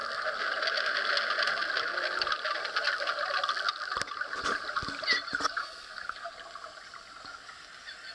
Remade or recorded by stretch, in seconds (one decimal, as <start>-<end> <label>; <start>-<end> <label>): 0.0-5.6 recorded; 5.6-6.3 remade; 6.3-8.1 recorded